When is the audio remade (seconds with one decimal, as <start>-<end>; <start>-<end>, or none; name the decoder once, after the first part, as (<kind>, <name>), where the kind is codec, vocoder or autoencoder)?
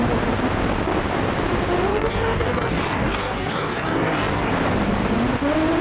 1.9-4.5 (codec, DAC)